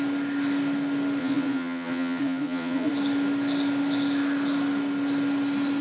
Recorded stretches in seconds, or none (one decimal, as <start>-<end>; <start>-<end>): 0.0-1.2; 2.9-5.8